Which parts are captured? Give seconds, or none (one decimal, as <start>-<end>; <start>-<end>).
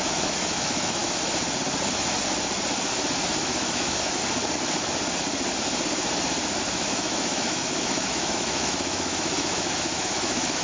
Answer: 1.0-3.4; 4.2-6.6